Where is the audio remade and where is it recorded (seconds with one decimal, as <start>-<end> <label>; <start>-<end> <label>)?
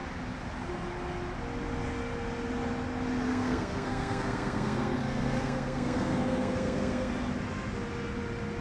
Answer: 0.0-3.3 recorded; 3.3-7.1 remade; 7.1-8.6 recorded